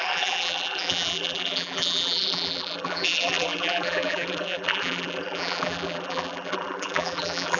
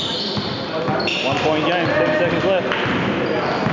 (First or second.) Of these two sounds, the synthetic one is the first